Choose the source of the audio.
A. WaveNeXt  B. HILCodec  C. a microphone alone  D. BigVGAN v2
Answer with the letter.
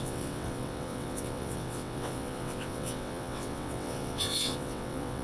A